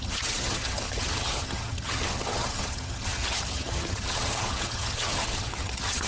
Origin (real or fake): fake